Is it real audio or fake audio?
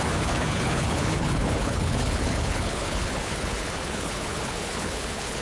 fake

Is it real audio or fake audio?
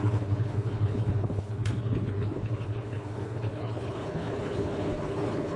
fake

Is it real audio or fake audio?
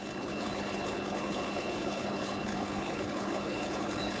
fake